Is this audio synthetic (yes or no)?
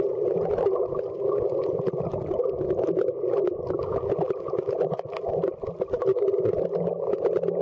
no